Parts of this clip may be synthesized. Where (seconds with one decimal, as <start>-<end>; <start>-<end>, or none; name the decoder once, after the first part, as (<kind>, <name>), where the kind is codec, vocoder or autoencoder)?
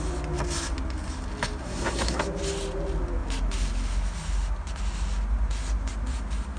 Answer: 1.6-2.2 (codec, SNAC)